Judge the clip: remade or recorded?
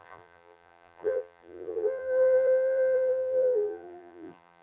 remade